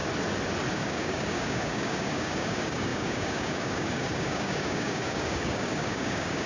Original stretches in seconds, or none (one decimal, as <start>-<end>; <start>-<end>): 0.0-0.7

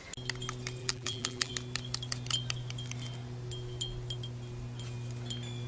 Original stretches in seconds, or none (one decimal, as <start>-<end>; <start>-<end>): 0.0-0.8; 1.5-5.7